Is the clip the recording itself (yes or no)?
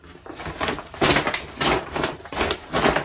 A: no